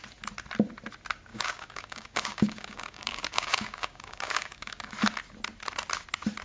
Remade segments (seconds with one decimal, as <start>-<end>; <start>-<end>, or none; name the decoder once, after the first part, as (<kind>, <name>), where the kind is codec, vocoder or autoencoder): 1.3-4.9 (codec, DAC)